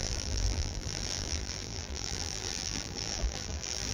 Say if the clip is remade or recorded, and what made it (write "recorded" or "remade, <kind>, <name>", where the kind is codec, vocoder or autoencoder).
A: remade, vocoder, BigVGAN v2